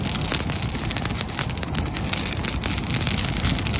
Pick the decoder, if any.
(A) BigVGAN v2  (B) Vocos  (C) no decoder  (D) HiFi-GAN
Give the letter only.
C